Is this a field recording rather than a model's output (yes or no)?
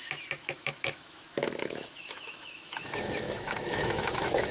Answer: no